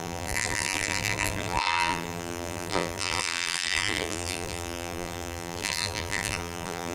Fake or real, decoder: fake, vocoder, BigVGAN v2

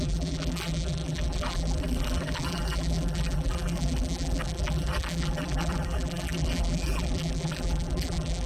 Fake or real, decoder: fake, vocoder, BigVGAN v2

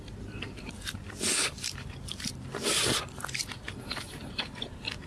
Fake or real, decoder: fake, vocoder, BigVGAN v2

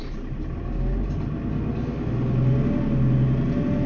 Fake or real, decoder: real